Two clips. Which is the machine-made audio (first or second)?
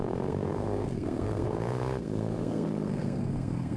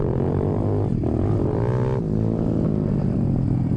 first